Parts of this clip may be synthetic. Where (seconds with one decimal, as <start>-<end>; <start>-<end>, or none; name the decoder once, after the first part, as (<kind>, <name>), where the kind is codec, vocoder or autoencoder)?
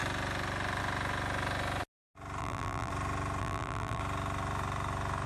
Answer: 2.4-2.9 (vocoder, BigVGAN v2); 3.4-4.0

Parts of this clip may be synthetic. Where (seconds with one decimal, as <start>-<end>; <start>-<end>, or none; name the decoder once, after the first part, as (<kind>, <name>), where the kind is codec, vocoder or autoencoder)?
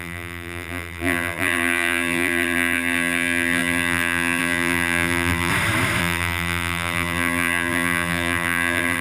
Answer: 0.0-5.5 (vocoder, BigVGAN v2); 6.0-9.0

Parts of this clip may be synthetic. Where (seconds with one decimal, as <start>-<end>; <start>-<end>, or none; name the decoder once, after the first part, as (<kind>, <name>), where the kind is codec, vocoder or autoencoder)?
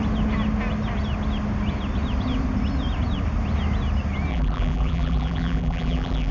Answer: 4.3-6.3 (vocoder, BigVGAN v2)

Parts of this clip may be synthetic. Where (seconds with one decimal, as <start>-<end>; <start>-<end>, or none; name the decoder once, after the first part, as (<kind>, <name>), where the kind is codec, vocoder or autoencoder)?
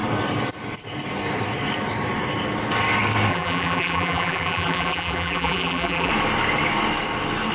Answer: 3.3-6.1 (vocoder, BigVGAN v2)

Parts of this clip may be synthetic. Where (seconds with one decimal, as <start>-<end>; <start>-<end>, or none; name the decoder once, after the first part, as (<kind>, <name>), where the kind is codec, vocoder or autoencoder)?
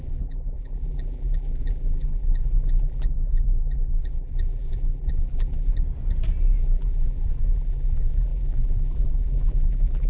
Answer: 0.0-5.7 (vocoder, BigVGAN v2); 6.6-10.1